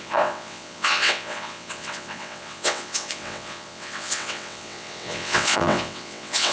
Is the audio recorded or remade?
remade